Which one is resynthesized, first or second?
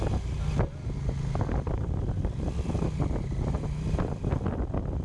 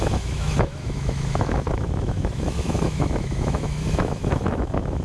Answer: second